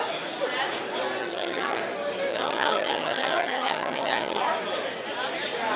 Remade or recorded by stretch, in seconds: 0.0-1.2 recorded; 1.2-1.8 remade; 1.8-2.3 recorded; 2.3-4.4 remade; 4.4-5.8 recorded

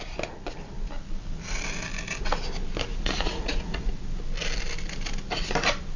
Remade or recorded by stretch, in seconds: 0.0-2.9 recorded; 2.9-3.9 remade; 3.9-6.0 recorded

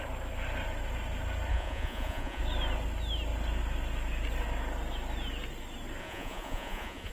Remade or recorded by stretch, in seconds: 0.0-1.5 recorded; 1.5-2.4 remade; 2.4-6.0 recorded; 6.0-7.1 remade

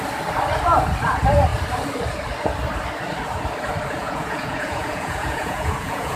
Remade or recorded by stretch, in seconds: 0.0-4.0 recorded; 4.0-6.2 remade

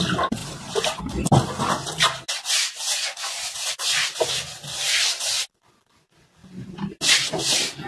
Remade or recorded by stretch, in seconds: 0.0-0.4 recorded; 0.4-1.0 remade; 1.0-7.9 recorded

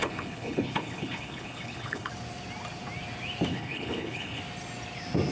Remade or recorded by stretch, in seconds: 0.0-2.1 remade; 2.1-3.5 recorded; 3.5-4.4 remade; 4.4-5.3 recorded

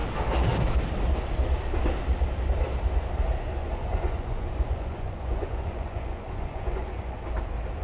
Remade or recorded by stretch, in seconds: 0.0-3.6 recorded; 3.6-7.2 remade; 7.2-7.8 recorded

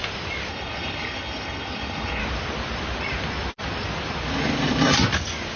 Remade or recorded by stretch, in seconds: 0.0-0.5 recorded; 0.5-2.2 remade; 2.2-5.6 recorded